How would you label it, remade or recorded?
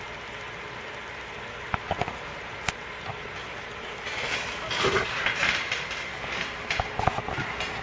recorded